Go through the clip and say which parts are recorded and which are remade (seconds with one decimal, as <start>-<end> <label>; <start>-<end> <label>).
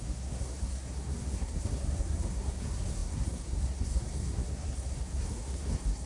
0.0-6.1 remade